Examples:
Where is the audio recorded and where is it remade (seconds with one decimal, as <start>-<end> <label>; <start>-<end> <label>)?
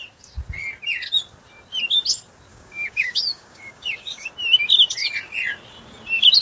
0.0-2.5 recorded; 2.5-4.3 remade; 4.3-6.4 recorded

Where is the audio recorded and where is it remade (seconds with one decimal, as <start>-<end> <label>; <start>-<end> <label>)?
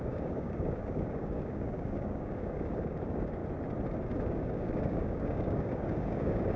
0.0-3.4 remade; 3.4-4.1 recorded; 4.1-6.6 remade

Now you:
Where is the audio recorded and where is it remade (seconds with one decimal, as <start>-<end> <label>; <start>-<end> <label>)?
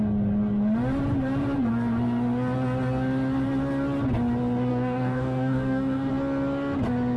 0.0-4.7 recorded; 4.7-6.1 remade; 6.1-7.2 recorded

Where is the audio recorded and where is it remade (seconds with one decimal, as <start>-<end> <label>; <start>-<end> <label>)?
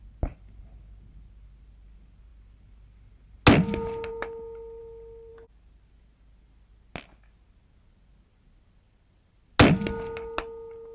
0.0-10.9 recorded